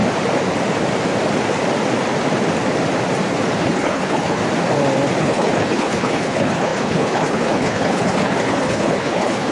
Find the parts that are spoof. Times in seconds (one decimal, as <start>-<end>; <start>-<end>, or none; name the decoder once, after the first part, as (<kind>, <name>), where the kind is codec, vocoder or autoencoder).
3.6-4.4 (codec, HILCodec); 5.2-9.5